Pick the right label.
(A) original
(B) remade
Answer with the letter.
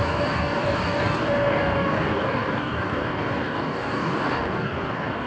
B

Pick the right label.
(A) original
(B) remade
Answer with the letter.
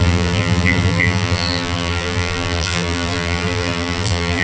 B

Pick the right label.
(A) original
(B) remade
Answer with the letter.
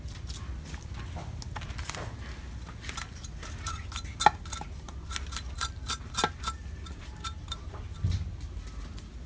A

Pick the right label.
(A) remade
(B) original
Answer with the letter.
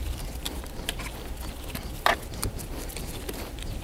A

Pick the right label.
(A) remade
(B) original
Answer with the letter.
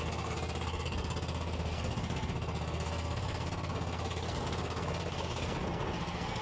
A